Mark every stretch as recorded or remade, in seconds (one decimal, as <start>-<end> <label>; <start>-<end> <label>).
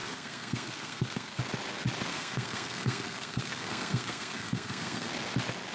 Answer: 0.0-1.4 remade; 1.4-2.1 recorded; 2.1-5.1 remade; 5.1-5.7 recorded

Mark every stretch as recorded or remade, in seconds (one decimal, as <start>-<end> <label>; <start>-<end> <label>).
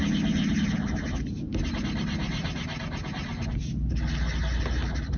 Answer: 0.0-5.2 recorded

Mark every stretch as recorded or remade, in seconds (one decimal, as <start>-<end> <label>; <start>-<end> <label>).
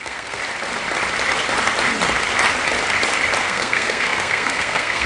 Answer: 0.0-0.4 remade; 0.4-3.4 recorded; 3.4-5.1 remade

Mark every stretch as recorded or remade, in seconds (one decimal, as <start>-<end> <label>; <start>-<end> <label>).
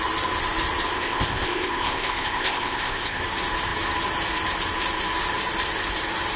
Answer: 0.0-0.9 recorded; 0.9-3.2 remade; 3.2-6.4 recorded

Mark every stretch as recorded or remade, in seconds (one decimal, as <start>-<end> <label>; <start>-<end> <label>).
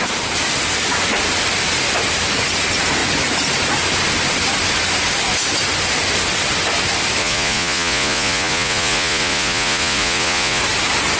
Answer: 0.0-7.2 recorded; 7.2-10.6 remade; 10.6-11.2 recorded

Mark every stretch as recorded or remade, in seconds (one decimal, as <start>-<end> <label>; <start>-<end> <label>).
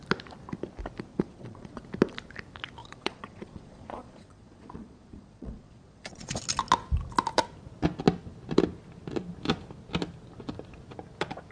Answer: 0.0-1.1 recorded; 1.1-1.8 remade; 1.8-2.8 recorded; 2.8-6.4 remade; 6.4-11.5 recorded